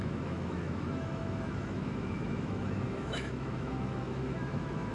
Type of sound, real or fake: fake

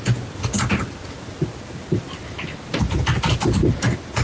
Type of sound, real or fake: real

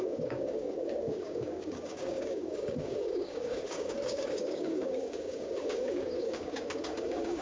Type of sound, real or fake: fake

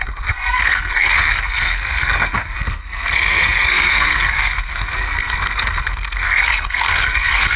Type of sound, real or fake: fake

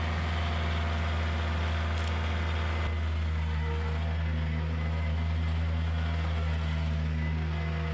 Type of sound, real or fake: real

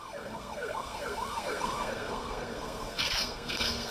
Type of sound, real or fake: fake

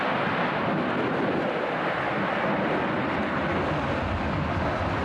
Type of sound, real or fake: real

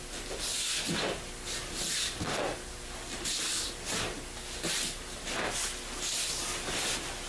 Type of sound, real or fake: real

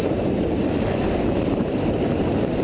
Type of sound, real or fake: fake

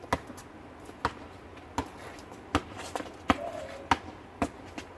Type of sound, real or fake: real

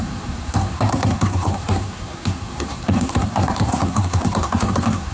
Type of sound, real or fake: fake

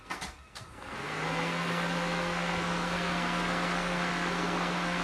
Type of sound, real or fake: fake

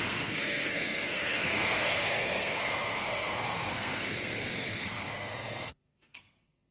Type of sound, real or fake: fake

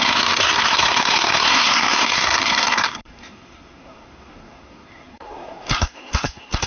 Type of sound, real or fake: fake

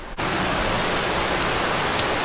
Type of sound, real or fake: real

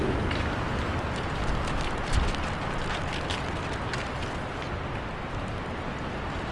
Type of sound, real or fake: real